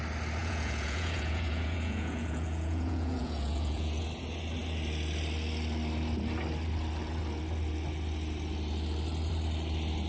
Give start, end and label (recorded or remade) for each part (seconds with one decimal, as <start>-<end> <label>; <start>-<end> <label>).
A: 0.0-0.4 recorded; 0.4-4.0 remade; 4.0-10.1 recorded